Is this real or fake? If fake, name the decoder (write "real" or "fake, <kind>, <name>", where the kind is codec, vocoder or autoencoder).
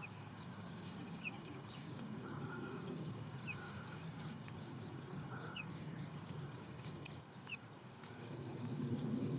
fake, codec, DAC